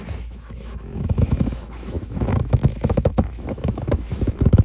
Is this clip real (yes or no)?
no